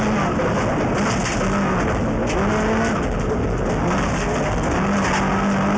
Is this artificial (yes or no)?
no